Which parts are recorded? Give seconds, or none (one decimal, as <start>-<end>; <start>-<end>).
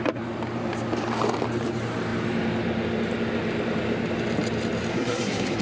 0.0-4.9